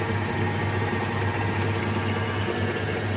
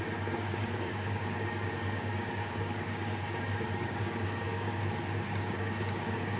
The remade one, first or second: second